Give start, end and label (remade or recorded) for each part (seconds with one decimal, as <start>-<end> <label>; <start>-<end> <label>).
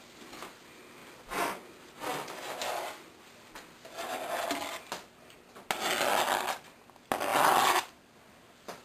0.0-8.8 recorded